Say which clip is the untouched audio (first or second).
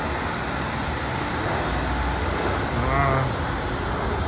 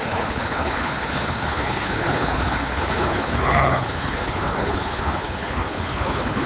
first